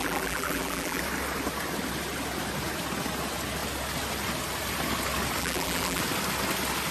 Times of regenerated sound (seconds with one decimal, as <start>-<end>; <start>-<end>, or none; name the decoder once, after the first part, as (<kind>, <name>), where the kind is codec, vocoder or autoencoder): 0.0-1.0 (vocoder, BigVGAN v2); 5.4-6.0